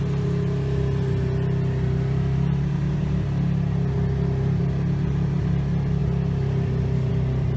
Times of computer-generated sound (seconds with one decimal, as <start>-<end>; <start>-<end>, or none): none